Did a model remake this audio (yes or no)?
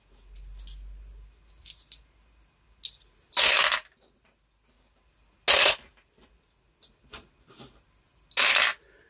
no